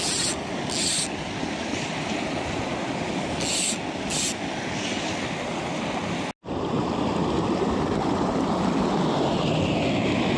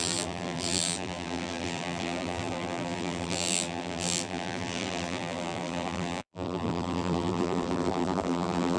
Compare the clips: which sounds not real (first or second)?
second